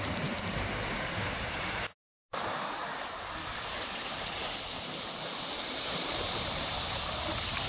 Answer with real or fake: fake